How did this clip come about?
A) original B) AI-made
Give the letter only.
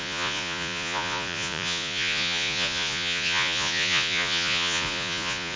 B